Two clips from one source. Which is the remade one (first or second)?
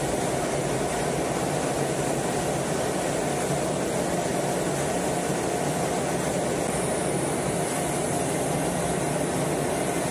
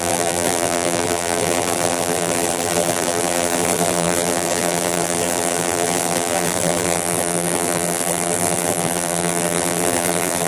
second